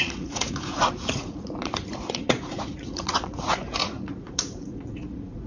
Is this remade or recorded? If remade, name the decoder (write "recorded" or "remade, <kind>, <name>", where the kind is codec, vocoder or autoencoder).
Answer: remade, vocoder, Vocos